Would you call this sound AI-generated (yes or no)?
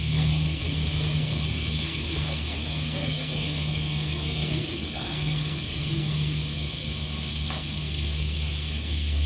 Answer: yes